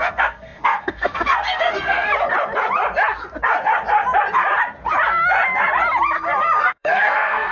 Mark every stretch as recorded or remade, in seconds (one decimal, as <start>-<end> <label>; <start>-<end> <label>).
0.0-2.1 remade; 2.1-6.6 recorded; 6.6-7.5 remade